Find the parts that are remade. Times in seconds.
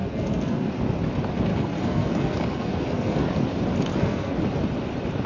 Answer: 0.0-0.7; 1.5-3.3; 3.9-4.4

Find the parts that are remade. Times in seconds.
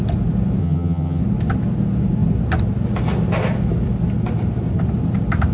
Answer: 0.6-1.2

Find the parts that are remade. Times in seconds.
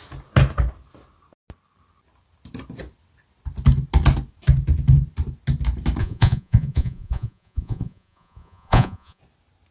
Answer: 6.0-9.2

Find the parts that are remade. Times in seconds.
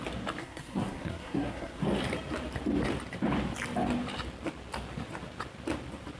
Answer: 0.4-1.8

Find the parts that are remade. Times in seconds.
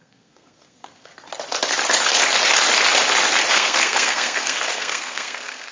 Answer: 0.0-1.1; 3.5-5.7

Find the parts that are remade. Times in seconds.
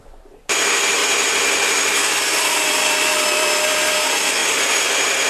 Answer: 1.0-3.9; 4.4-5.3